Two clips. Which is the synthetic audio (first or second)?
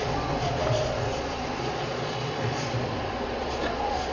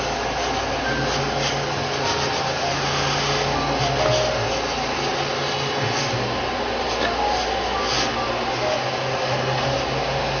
first